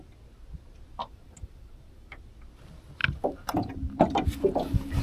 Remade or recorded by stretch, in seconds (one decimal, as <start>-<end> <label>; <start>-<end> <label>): 0.0-1.0 recorded; 1.0-2.2 remade; 2.2-3.0 recorded; 3.0-5.0 remade